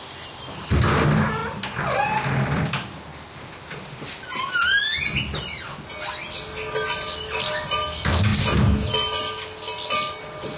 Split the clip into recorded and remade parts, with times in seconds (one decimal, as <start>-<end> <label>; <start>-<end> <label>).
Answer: 0.0-10.6 recorded